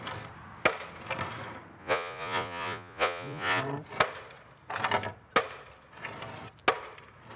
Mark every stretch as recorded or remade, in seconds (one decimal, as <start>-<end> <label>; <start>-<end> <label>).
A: 0.0-1.8 recorded; 1.8-3.6 remade; 3.6-7.4 recorded